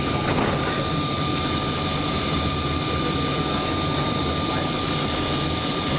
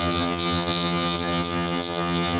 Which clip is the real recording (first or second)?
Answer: first